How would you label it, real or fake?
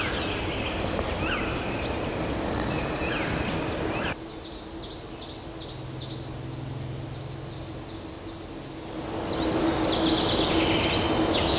real